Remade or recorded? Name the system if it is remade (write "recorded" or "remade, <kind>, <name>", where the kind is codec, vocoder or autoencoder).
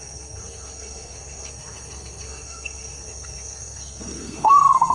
remade, codec, SNAC